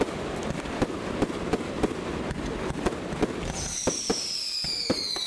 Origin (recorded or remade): recorded